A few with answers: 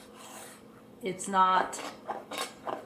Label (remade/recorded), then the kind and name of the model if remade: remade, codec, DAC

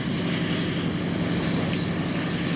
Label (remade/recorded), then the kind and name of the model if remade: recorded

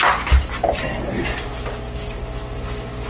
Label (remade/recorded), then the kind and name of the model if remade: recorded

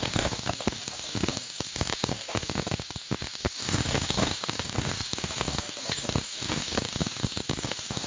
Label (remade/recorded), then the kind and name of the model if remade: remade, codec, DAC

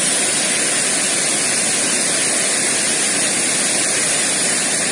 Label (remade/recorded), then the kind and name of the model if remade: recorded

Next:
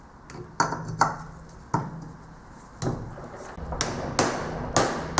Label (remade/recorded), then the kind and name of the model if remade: recorded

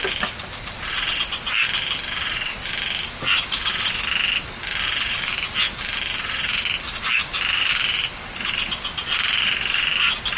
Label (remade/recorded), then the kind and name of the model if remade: recorded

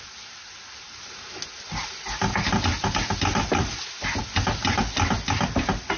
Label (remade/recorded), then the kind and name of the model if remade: recorded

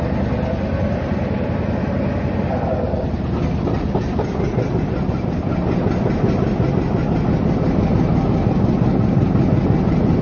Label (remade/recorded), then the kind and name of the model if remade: recorded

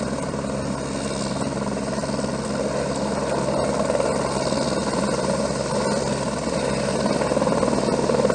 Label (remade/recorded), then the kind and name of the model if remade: recorded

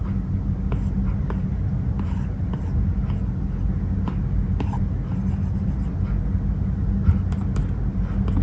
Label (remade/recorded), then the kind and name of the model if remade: recorded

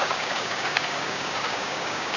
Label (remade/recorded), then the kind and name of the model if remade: remade, codec, DAC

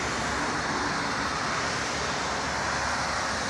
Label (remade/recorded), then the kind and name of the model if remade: recorded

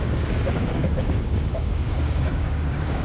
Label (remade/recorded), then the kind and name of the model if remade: remade, codec, DAC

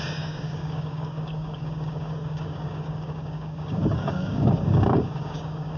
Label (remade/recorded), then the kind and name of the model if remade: remade, codec, DAC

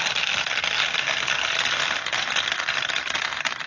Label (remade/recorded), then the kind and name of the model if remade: recorded